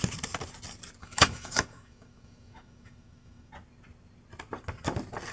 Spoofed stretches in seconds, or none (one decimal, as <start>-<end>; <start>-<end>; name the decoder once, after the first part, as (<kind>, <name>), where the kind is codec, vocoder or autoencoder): 1.0-3.5 (autoencoder, DAC-VAE)